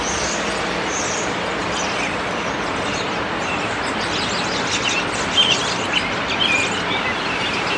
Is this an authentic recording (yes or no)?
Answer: yes